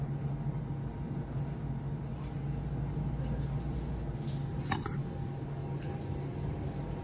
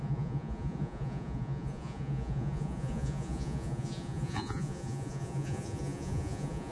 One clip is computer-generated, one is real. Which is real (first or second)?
first